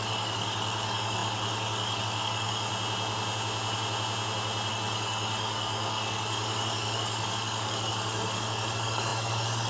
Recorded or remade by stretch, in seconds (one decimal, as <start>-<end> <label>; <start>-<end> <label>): 0.0-2.7 remade; 2.7-4.7 recorded; 4.7-9.7 remade